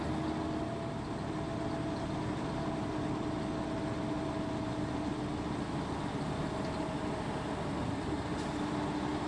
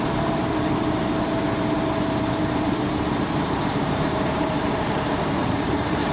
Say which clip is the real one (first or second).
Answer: first